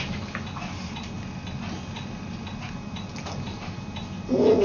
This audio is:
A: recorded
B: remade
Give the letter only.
A